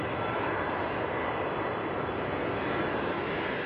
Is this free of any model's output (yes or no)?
yes